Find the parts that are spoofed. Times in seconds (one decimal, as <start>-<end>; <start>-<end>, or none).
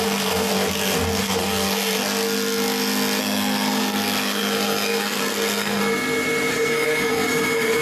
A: 0.0-0.5; 1.2-2.0; 3.2-5.8; 6.5-7.8